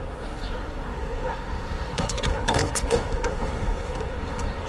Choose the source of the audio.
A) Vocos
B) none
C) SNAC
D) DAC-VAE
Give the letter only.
C